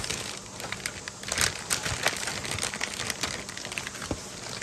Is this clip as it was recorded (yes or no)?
yes